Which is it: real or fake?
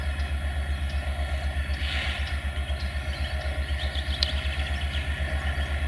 real